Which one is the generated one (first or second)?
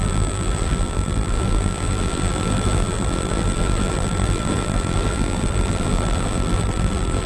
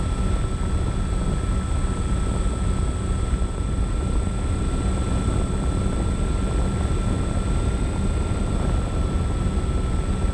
first